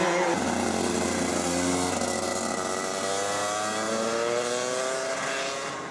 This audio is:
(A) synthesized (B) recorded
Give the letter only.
B